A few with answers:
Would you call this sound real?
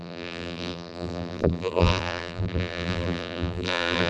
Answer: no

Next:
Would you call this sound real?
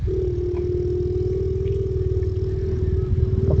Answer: yes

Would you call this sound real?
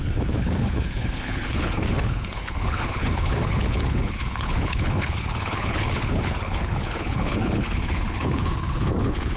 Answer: no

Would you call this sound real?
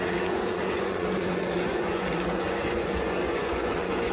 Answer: no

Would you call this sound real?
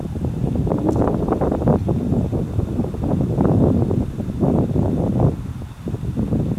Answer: yes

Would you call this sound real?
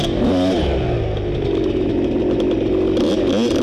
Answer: yes